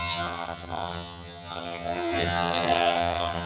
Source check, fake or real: fake